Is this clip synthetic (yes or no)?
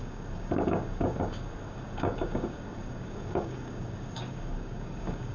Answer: yes